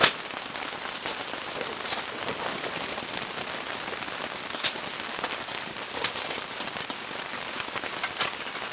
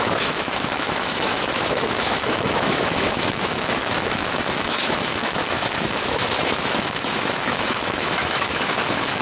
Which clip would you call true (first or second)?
first